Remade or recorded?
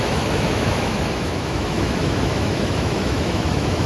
remade